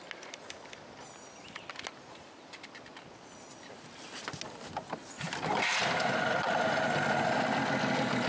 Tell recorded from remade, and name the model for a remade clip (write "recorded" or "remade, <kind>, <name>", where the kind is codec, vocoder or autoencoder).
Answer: recorded